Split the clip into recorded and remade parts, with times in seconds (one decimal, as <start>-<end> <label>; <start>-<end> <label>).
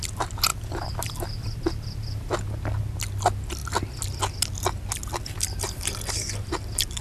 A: 0.0-0.5 recorded; 0.5-2.3 remade; 2.3-5.0 recorded; 5.0-5.8 remade; 5.8-7.0 recorded